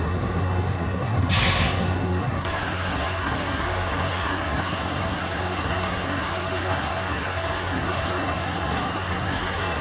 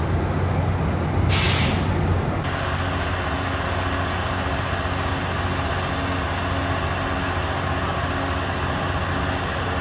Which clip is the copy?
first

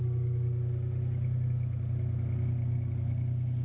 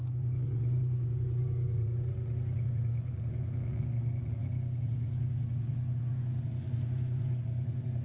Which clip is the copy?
second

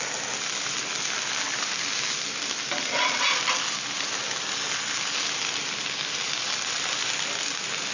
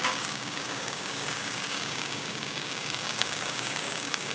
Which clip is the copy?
second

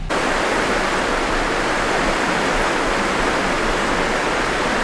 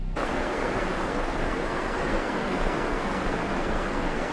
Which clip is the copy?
second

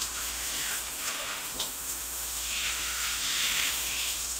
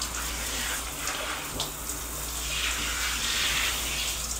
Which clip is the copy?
first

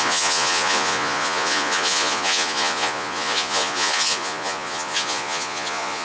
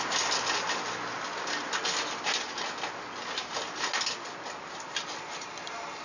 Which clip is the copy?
first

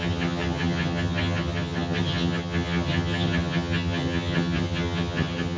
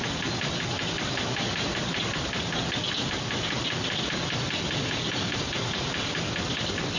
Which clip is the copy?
first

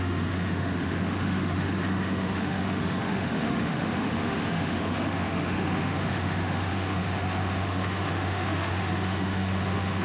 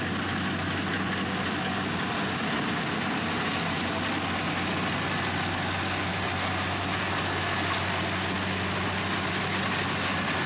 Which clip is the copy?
first